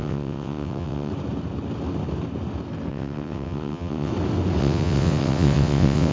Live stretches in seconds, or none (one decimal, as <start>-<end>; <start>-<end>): 1.1-2.9; 4.1-4.6